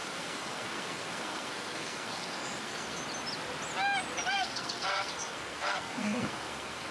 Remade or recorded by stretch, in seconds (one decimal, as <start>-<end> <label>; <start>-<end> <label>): 0.0-3.0 remade; 3.0-4.3 recorded; 4.3-6.9 remade